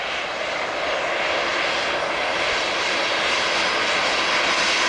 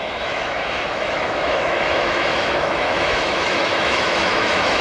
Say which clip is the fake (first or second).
second